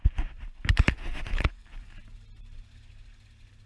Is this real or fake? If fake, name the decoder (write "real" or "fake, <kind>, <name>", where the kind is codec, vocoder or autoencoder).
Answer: real